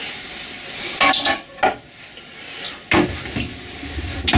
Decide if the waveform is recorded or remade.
recorded